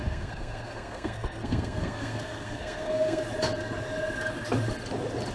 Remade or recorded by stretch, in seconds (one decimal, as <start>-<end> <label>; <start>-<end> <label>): 0.0-3.2 remade; 3.2-5.3 recorded